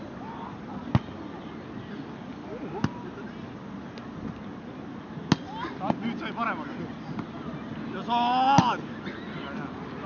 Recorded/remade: recorded